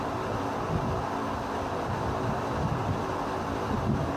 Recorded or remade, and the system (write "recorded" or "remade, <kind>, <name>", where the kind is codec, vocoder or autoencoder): recorded